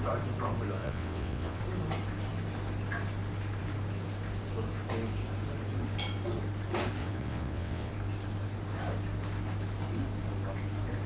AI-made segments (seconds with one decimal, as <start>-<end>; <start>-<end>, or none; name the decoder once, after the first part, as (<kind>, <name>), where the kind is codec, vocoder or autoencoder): 0.8-1.6 (vocoder, WaveNeXt); 7.0-7.9